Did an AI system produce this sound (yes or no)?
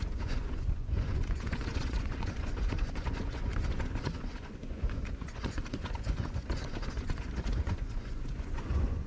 yes